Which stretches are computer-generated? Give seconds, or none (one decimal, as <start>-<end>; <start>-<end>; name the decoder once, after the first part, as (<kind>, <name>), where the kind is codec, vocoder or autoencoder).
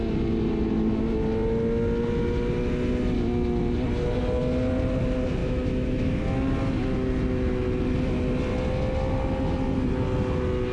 5.4-6.2 (autoencoder, DAC-VAE)